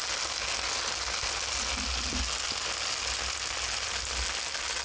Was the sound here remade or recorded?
recorded